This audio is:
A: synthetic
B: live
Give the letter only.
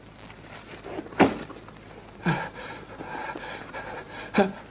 B